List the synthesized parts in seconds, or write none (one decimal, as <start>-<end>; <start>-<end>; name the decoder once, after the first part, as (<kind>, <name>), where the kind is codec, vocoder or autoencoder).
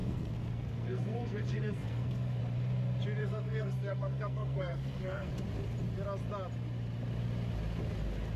0.0-2.4 (codec, SNAC); 3.2-5.3